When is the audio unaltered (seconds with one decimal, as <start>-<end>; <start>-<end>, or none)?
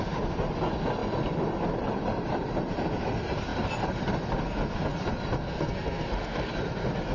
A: 0.0-5.4; 6.5-7.1